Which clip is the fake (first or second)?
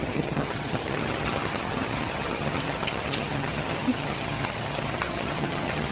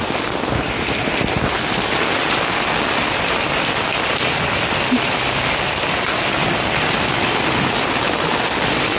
first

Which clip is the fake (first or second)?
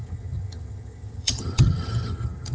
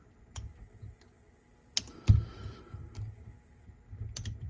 first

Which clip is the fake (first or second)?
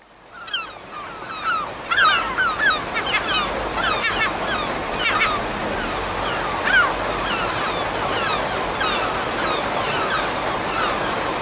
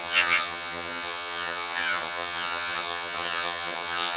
second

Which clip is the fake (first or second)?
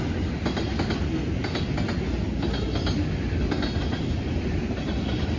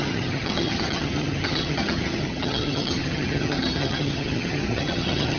second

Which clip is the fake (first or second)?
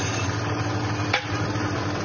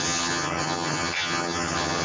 second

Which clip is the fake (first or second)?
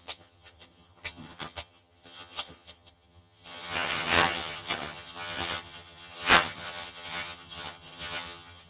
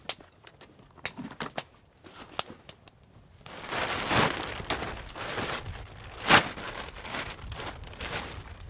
first